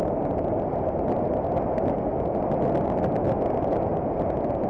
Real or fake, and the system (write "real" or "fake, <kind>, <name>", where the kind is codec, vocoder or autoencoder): real